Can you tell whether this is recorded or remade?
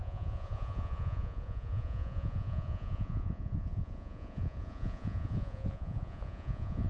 remade